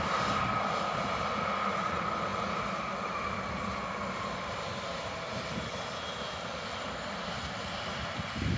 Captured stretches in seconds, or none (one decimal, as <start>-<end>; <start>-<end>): 0.0-8.6